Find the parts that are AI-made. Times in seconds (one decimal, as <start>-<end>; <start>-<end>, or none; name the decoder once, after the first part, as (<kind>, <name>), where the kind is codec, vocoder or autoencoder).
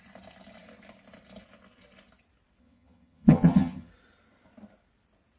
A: 2.6-3.9 (vocoder, HiFi-GAN)